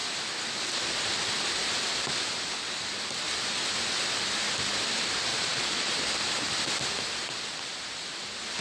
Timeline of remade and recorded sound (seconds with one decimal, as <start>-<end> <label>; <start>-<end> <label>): 0.0-5.3 recorded; 5.3-5.9 remade; 5.9-8.6 recorded